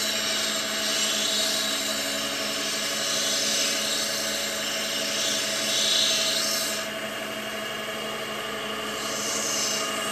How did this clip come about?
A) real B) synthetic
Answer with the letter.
A